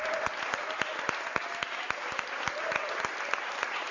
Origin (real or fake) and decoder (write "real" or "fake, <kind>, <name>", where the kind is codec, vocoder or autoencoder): real